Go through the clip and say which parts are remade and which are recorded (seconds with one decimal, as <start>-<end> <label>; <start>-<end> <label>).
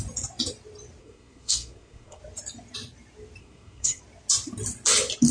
0.0-1.0 recorded; 1.0-2.2 remade; 2.2-3.4 recorded; 3.4-4.0 remade; 4.0-5.3 recorded